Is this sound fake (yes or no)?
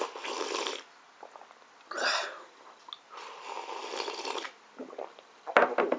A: no